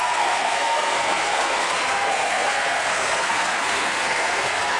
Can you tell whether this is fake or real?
fake